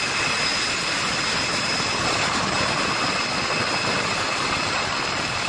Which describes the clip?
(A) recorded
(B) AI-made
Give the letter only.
A